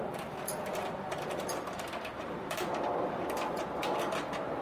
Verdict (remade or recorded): remade